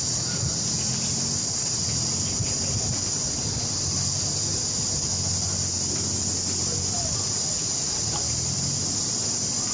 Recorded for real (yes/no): yes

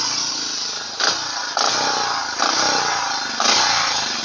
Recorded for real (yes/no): yes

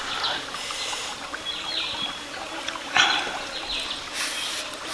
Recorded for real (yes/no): yes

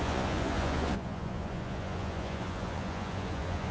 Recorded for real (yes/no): no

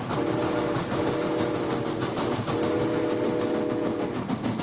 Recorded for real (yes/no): yes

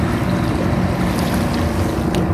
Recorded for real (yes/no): yes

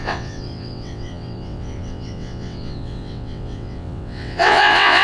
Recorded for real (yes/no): no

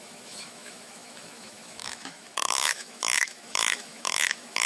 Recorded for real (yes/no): no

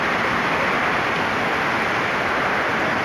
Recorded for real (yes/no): yes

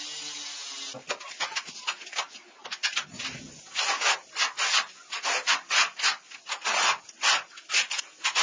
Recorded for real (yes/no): yes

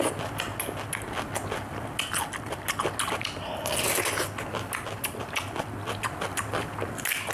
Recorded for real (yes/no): yes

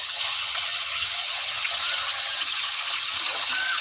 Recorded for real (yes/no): no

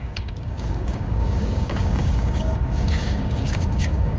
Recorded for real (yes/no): no